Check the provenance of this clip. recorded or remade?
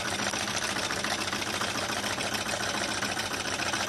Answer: recorded